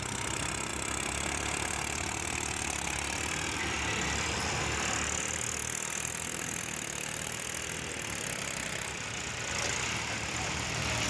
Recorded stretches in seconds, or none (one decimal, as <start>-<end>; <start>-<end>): 0.0-0.7; 3.6-11.1